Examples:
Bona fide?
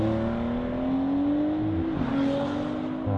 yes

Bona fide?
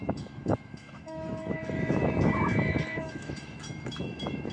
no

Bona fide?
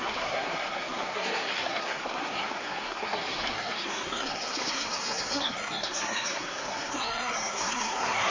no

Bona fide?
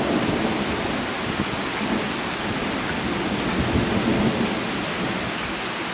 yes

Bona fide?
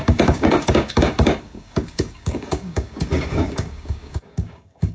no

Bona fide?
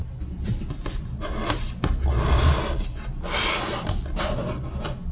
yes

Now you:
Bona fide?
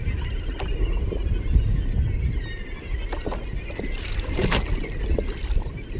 yes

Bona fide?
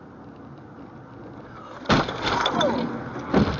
yes